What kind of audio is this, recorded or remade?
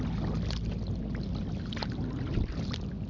recorded